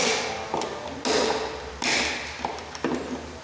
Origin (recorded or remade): recorded